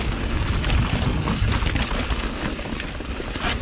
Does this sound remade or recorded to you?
recorded